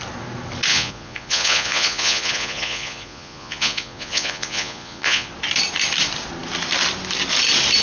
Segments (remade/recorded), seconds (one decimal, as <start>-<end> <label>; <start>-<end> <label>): 0.0-0.7 recorded; 0.7-5.3 remade; 5.3-7.8 recorded